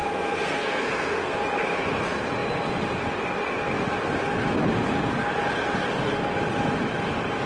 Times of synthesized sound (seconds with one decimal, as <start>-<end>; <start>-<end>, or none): 0.0-1.4